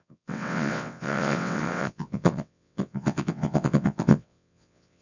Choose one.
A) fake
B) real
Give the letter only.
A